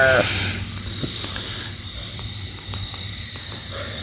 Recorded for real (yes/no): yes